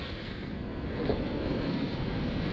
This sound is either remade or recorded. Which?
remade